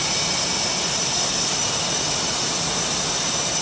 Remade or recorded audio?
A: recorded